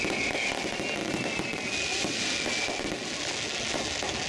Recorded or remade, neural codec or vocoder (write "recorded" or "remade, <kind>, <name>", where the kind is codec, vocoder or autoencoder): recorded